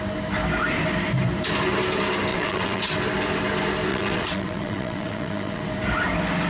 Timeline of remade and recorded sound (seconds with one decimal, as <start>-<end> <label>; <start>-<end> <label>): 0.0-2.3 recorded; 2.3-2.8 remade; 2.8-3.9 recorded; 3.9-5.6 remade; 5.6-6.5 recorded